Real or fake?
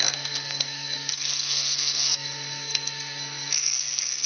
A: fake